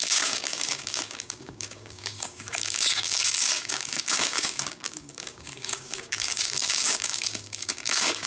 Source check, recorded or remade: remade